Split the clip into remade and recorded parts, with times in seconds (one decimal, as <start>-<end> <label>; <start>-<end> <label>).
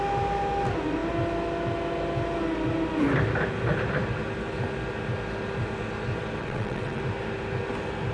0.0-6.4 recorded; 6.4-7.0 remade; 7.0-8.1 recorded